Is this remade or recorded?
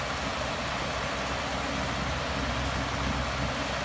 recorded